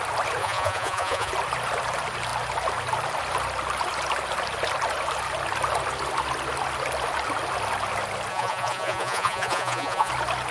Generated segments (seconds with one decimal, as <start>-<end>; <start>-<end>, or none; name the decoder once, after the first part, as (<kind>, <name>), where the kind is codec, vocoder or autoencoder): 0.4-1.3 (vocoder, Vocos); 8.3-10.1